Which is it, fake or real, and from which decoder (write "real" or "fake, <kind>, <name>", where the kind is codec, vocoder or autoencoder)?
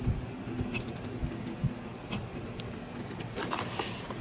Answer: real